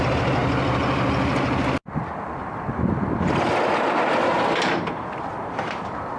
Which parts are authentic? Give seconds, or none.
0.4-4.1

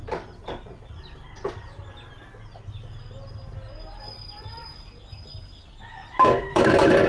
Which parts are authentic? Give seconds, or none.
0.9-6.0; 6.6-7.1

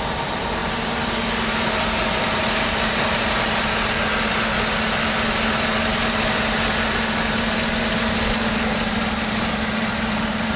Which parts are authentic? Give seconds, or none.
0.0-10.6

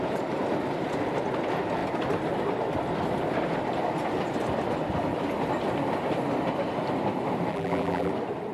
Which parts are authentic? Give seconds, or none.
0.0-7.5; 8.1-8.5

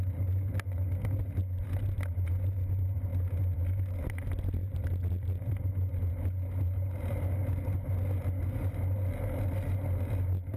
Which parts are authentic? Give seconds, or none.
0.0-10.6